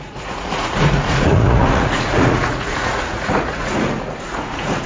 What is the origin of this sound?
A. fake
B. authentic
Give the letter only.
A